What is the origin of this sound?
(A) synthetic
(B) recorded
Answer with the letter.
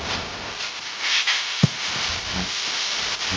B